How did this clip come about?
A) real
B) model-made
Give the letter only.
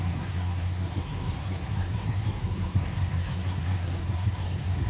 B